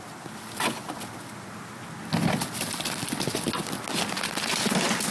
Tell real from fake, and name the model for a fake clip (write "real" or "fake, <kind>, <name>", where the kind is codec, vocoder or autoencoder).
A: real